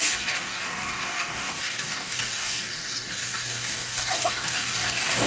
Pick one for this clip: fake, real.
fake